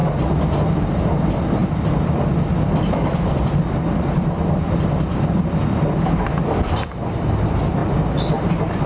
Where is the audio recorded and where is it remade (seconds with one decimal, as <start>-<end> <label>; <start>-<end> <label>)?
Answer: 0.0-1.6 remade; 1.6-2.8 recorded; 2.8-5.1 remade; 5.1-5.6 recorded; 5.6-7.8 remade; 7.8-8.9 recorded